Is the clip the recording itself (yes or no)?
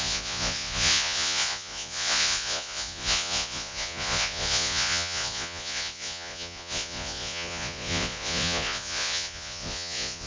no